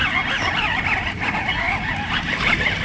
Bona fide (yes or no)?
yes